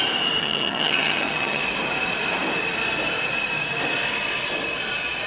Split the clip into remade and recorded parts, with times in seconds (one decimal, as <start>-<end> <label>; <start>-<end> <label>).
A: 0.0-0.4 recorded; 0.4-1.6 remade; 1.6-5.3 recorded